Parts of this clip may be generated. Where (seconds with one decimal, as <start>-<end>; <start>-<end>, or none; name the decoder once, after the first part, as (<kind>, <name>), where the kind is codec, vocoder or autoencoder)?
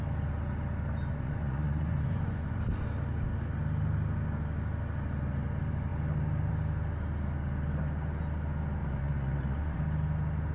1.1-2.6 (vocoder, Vocos); 8.8-9.8